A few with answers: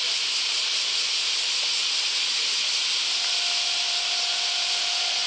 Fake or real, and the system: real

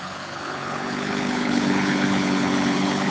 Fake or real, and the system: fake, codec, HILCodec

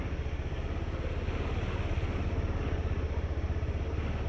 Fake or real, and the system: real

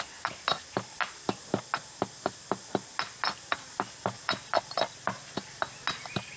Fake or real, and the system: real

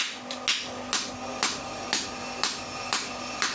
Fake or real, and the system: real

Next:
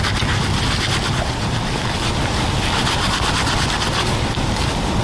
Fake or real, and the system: real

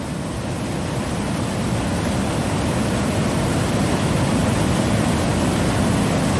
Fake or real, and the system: real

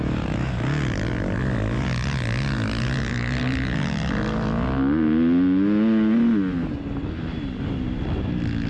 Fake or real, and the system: real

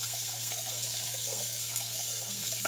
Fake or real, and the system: fake, codec, SNAC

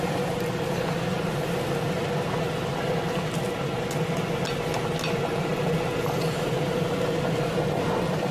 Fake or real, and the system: real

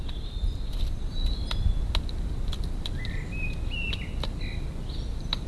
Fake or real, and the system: real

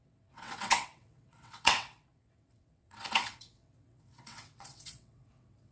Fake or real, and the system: fake, vocoder, WaveNeXt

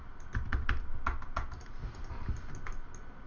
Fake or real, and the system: real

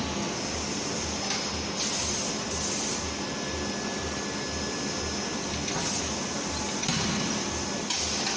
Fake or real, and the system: real